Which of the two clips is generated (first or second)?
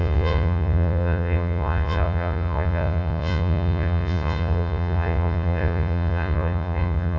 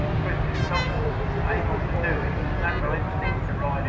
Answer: first